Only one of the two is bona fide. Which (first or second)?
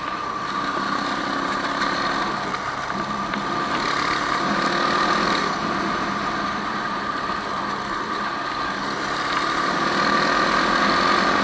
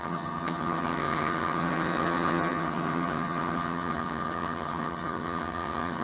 first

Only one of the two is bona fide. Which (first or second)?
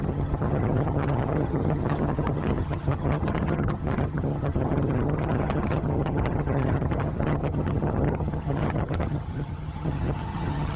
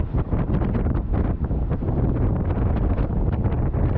second